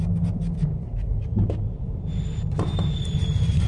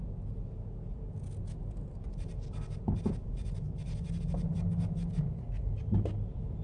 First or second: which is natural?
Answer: second